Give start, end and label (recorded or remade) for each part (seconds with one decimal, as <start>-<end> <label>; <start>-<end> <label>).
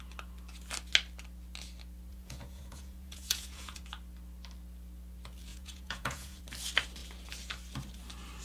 0.0-2.1 recorded; 2.1-3.8 remade; 3.8-5.5 recorded; 5.5-6.4 remade; 6.4-8.4 recorded